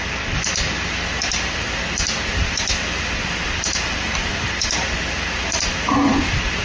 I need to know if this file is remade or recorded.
recorded